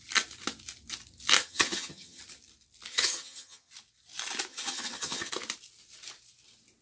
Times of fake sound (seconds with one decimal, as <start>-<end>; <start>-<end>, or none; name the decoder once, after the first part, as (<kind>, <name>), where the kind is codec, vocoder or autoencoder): 1.4-2.2 (vocoder, HiFi-GAN); 2.9-3.7; 4.5-5.3